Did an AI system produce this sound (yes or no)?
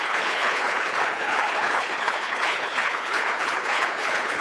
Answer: yes